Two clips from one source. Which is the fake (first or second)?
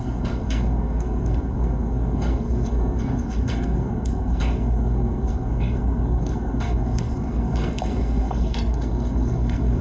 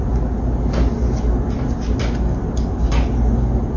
first